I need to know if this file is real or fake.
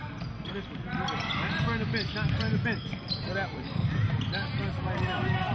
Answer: real